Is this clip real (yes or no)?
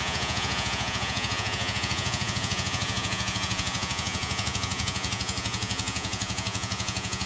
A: no